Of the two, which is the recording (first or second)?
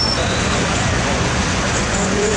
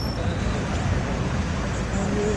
second